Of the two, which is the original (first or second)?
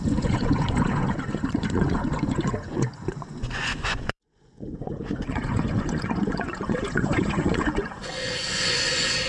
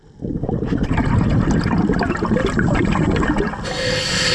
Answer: second